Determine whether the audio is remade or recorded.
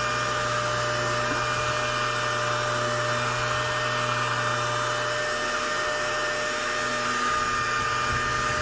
recorded